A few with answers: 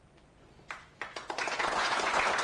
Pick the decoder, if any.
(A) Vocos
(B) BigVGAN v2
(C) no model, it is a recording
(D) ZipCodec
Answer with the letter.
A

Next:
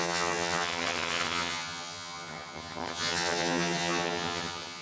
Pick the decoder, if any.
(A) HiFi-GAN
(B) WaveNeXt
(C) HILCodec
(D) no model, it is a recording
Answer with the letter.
A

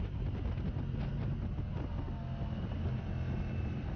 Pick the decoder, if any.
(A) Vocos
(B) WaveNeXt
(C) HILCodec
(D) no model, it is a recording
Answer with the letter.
D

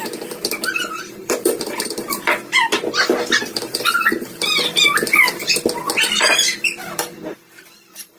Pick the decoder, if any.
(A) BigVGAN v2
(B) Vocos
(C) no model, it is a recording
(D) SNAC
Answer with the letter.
A